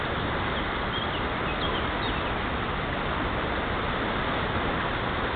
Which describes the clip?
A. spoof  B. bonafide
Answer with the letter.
B